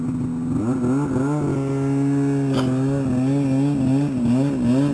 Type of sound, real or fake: real